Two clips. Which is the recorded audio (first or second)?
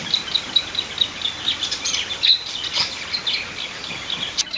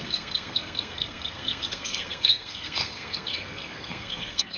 first